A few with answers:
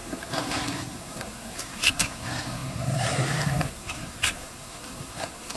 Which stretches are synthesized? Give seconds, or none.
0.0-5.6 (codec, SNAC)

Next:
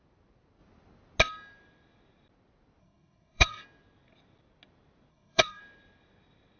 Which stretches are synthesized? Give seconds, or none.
2.8-3.6 (codec, SNAC); 5.1-5.6